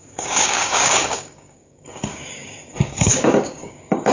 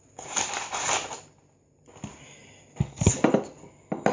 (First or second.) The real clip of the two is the second